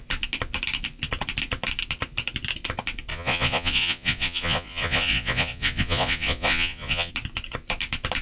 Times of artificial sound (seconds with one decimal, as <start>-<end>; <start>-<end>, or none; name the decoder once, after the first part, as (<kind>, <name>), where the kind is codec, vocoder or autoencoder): 3.1-7.1 (vocoder, Vocos)